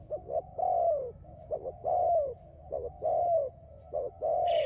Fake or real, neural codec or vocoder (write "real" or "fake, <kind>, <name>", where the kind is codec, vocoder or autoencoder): fake, autoencoder, DAC-VAE